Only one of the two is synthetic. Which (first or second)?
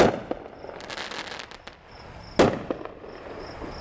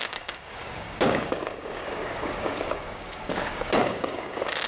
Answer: second